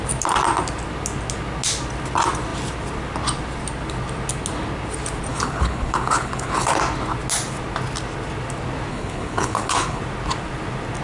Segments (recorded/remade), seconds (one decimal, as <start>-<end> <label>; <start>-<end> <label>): 0.0-5.3 recorded; 5.3-6.7 remade; 6.7-8.9 recorded; 8.9-10.0 remade; 10.0-11.0 recorded

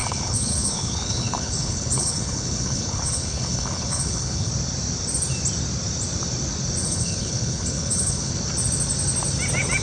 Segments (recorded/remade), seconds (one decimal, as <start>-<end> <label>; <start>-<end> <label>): 0.0-4.5 remade; 4.5-6.8 recorded; 6.8-8.3 remade; 8.3-9.8 recorded

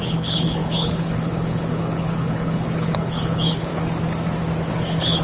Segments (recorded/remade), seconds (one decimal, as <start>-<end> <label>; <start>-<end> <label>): 0.0-3.7 remade; 3.7-4.7 recorded; 4.7-5.2 remade

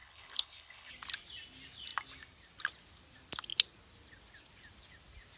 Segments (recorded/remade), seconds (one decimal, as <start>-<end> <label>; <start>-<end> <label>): 0.0-0.9 remade; 0.9-5.4 recorded

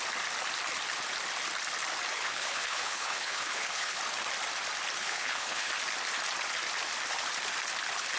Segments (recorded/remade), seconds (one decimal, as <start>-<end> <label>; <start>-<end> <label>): 0.0-2.1 recorded; 2.1-4.0 remade; 4.0-5.0 recorded; 5.0-5.7 remade; 5.7-8.2 recorded